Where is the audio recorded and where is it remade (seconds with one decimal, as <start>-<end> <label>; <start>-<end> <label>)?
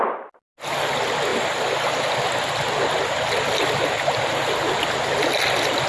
0.0-5.9 recorded